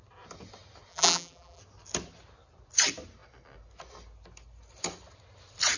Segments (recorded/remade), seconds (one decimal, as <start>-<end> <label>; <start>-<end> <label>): 0.0-0.9 recorded; 0.9-1.6 remade; 1.6-5.8 recorded